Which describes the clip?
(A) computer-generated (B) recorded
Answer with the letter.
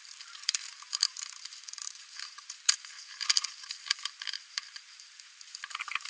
A